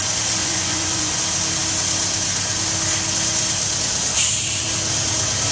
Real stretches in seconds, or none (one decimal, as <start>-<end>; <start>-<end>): 0.0-0.4; 1.2-5.5